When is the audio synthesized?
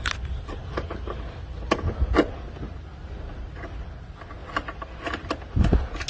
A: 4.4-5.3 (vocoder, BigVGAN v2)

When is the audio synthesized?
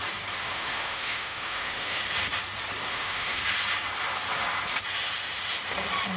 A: 0.4-2.0 (autoencoder, DAC-VAE); 2.9-3.4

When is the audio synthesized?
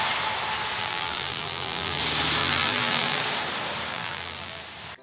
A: 0.8-2.0 (vocoder, BigVGAN v2); 2.4-3.2; 3.9-4.6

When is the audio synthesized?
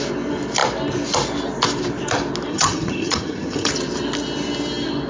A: 2.5-3.7 (vocoder, HiFi-GAN)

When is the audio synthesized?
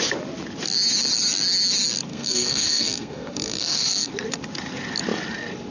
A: 2.1-4.1 (codec, SNAC)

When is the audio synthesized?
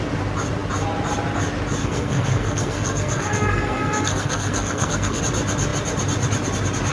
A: 1.8-5.2 (codec, SNAC)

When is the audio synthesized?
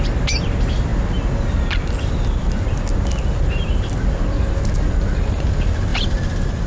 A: 5.9-6.7 (vocoder, BigVGAN v2)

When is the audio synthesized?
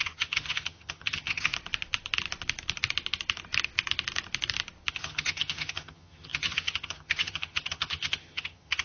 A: 0.0-1.5 (vocoder, HiFi-GAN); 4.9-8.8